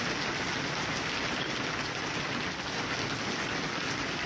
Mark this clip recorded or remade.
recorded